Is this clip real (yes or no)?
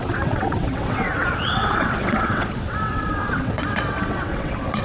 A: no